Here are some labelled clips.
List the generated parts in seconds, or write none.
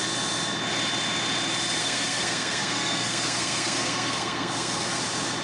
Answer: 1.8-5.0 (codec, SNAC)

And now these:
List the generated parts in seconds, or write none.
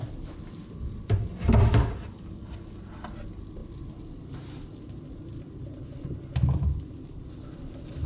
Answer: none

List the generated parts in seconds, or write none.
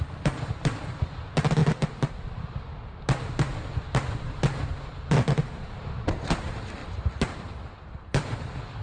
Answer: 0.0-1.6 (vocoder, BigVGAN v2); 4.7-6.8; 7.8-8.8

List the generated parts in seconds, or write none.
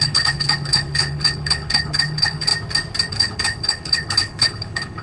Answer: 0.0-2.5 (codec, HILCodec); 3.1-5.0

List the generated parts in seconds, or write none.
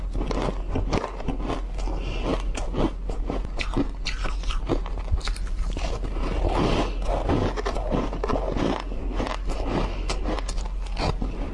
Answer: none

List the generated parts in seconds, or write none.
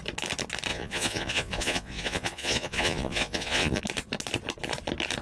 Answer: 0.7-3.8 (vocoder, Vocos)